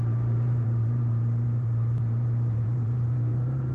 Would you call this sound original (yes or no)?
no